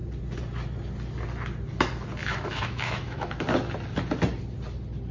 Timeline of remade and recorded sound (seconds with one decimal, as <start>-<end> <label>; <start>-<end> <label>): 0.0-2.2 recorded; 2.2-3.4 remade; 3.4-5.1 recorded

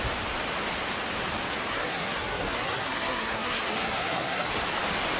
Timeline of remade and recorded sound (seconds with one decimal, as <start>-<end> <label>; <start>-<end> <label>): 0.0-1.7 recorded; 1.7-4.5 remade; 4.5-5.2 recorded

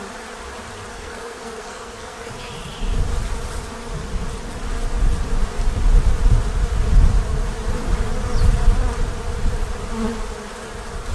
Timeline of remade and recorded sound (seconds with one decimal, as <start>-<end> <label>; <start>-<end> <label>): 0.0-0.9 recorded; 0.9-2.3 remade; 2.3-11.1 recorded

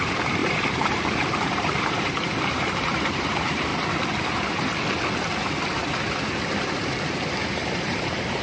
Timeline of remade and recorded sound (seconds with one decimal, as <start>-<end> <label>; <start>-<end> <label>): 0.0-3.7 remade; 3.7-6.9 recorded; 6.9-8.4 remade